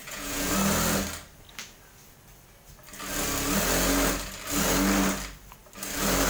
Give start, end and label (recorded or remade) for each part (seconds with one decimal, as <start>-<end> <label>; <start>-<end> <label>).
0.0-0.5 remade; 0.5-6.3 recorded